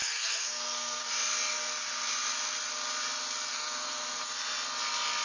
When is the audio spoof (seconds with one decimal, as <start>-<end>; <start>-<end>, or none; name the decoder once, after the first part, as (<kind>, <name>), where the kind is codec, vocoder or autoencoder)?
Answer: 0.0-1.0 (codec, SNAC); 3.5-4.2